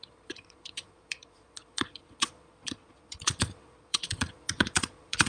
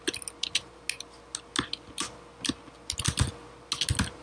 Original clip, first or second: second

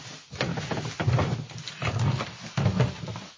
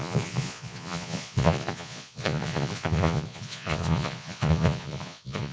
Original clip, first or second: first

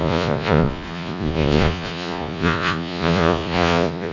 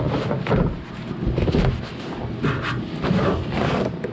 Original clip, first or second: second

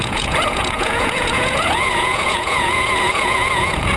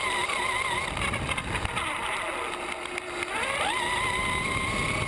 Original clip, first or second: second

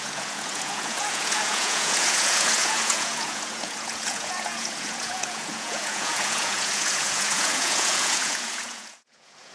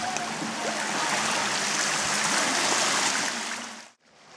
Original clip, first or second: second